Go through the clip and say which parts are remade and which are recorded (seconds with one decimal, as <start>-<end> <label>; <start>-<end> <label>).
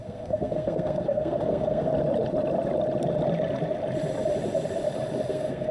0.0-1.9 remade; 1.9-5.3 recorded; 5.3-5.7 remade